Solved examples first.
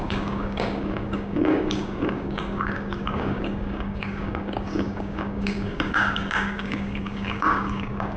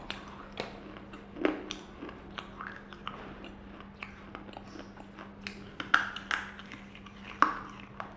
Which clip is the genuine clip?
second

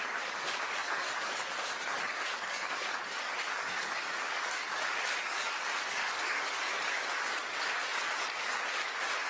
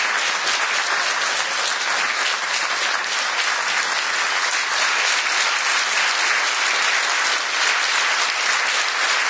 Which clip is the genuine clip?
second